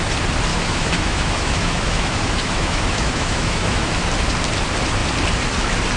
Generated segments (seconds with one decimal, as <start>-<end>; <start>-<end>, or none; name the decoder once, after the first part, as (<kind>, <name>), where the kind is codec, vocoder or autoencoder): 0.5-3.9 (autoencoder, DAC-VAE)